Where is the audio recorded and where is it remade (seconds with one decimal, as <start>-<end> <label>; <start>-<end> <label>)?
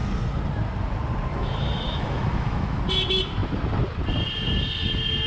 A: 0.0-1.3 recorded; 1.3-2.8 remade; 2.8-5.3 recorded